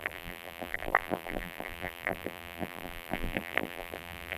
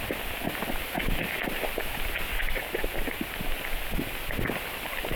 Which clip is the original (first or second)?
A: second